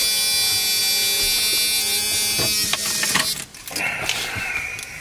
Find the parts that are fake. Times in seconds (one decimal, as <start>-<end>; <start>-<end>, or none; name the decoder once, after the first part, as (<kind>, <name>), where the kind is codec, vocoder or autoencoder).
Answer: none